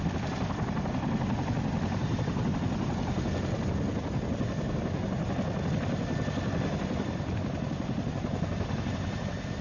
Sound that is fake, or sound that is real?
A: real